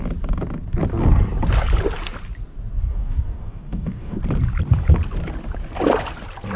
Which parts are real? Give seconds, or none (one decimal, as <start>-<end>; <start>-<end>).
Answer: 0.0-2.9; 4.2-6.6